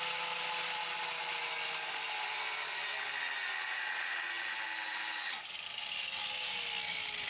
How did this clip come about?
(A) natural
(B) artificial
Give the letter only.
A